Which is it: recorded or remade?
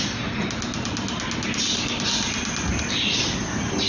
recorded